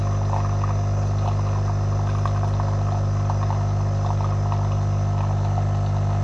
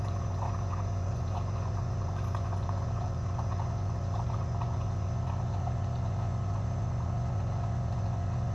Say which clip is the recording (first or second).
first